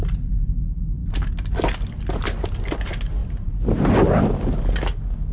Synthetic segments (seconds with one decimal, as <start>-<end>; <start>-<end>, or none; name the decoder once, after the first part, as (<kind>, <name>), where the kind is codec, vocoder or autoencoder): 3.2-3.8 (vocoder, BigVGAN v2)